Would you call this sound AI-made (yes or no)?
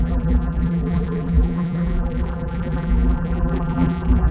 yes